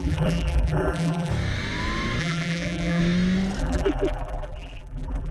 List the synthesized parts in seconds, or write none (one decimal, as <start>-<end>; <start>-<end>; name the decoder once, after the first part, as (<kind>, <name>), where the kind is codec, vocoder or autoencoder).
0.0-1.3 (vocoder, BigVGAN v2); 2.2-3.0; 3.6-5.3